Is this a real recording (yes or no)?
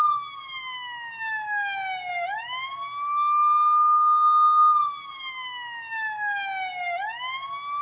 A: yes